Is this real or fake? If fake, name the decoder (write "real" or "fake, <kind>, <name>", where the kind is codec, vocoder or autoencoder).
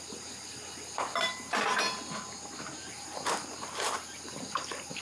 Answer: real